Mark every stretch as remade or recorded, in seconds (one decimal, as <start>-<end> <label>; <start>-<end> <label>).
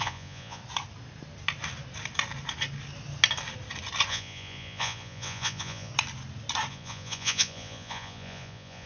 0.0-0.6 remade; 0.6-4.1 recorded; 4.1-5.9 remade; 5.9-6.7 recorded; 6.7-8.9 remade